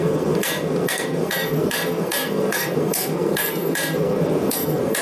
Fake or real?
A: fake